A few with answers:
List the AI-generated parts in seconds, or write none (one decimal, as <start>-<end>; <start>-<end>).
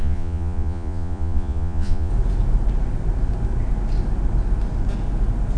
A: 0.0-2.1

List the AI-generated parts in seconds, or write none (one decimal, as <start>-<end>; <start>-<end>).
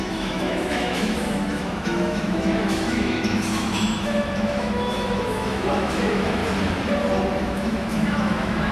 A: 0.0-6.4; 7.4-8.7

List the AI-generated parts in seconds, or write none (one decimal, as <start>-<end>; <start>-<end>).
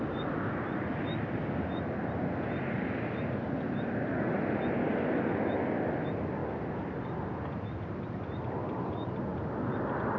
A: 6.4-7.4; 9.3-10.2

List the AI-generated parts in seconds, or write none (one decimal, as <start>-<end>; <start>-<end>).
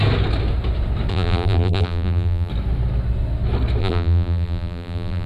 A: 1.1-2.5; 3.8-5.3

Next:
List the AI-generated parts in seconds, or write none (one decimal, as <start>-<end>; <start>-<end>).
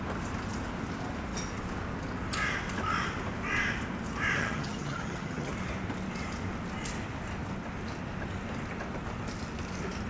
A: 4.4-5.5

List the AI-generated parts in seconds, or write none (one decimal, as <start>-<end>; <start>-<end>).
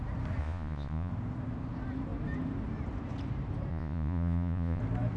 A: 0.4-1.1; 3.7-4.8